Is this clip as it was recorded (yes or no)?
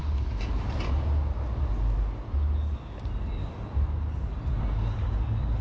yes